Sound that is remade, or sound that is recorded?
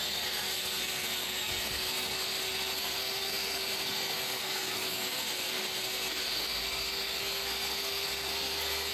remade